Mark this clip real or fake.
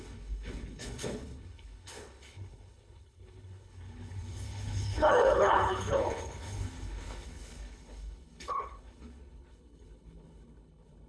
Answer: fake